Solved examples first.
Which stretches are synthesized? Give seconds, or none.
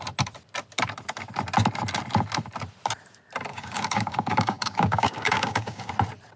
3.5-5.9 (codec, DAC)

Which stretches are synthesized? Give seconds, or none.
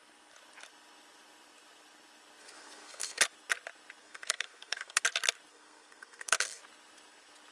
2.4-3.2 (codec, SNAC); 4.0-5.0; 5.5-6.6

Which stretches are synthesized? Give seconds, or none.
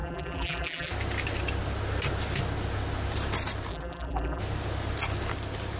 0.0-0.9 (vocoder, BigVGAN v2); 3.7-4.4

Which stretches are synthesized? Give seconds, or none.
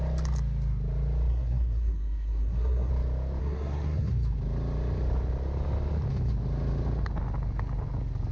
1.3-2.9 (codec, SNAC); 3.4-4.1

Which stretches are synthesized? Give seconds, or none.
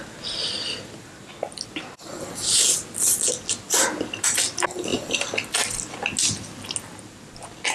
none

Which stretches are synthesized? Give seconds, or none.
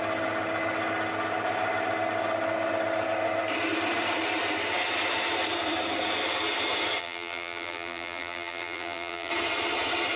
7.0-9.3 (vocoder, BigVGAN v2)